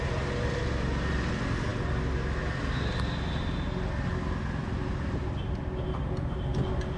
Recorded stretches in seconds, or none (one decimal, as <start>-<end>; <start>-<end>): 0.0-7.0